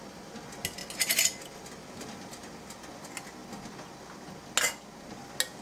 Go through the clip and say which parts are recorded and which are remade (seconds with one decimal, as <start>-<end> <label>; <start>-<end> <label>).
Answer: 0.0-5.6 recorded